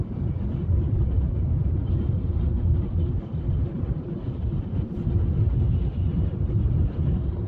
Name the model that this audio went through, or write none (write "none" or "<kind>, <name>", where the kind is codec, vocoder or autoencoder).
none